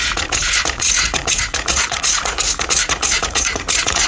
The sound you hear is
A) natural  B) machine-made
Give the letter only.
B